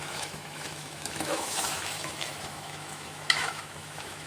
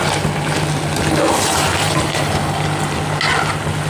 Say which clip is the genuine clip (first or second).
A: second